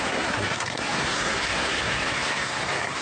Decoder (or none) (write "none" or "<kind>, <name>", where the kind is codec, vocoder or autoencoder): codec, SNAC